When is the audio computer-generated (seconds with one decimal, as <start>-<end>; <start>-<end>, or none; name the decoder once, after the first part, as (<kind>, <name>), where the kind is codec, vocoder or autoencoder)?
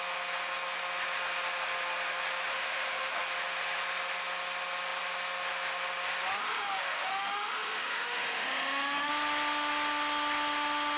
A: 2.5-3.2 (autoencoder, DAC-VAE); 6.4-9.1